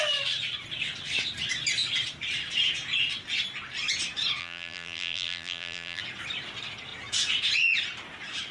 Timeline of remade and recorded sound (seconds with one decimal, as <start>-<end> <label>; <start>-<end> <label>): 0.0-4.4 recorded; 4.4-6.0 remade; 6.0-8.5 recorded

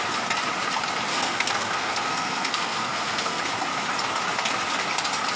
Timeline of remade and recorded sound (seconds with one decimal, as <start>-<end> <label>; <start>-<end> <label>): 0.0-1.1 recorded; 1.1-3.4 remade; 3.4-5.4 recorded

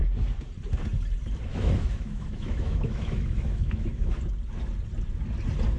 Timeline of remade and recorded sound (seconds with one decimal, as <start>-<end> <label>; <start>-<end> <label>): 0.0-1.5 recorded; 1.5-4.2 remade; 4.2-5.8 recorded

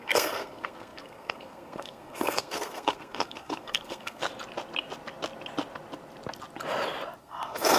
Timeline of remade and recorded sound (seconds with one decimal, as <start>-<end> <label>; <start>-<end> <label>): 0.0-4.2 remade; 4.2-7.2 recorded; 7.2-7.8 remade